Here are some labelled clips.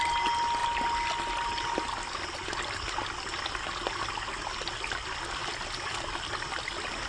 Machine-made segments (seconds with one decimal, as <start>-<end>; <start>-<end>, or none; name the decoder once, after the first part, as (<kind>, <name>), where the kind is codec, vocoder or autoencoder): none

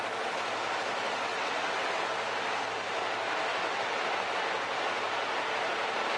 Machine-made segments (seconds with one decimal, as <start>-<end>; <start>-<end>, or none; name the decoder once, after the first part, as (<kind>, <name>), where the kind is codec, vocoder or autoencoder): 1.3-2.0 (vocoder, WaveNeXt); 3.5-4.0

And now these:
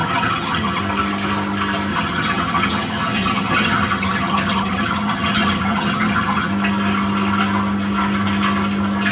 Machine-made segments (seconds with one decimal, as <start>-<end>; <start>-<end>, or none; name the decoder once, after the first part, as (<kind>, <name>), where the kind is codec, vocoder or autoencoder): 0.0-0.8 (vocoder, HiFi-GAN); 1.9-6.5